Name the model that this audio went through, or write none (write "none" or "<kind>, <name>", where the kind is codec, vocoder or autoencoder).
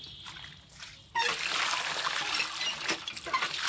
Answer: vocoder, BigVGAN v2